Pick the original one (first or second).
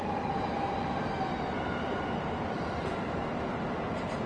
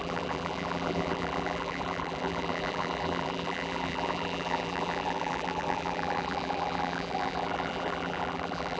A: first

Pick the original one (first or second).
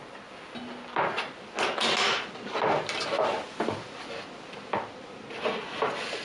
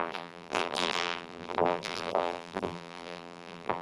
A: first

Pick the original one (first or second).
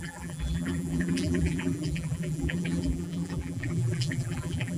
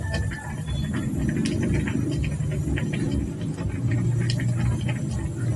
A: second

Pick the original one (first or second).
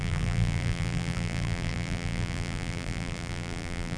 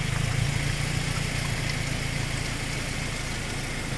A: second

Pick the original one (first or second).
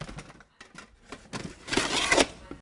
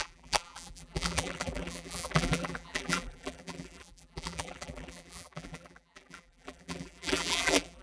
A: first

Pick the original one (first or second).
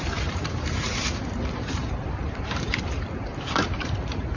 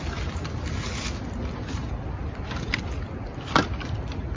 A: second